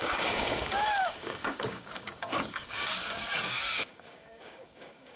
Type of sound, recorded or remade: remade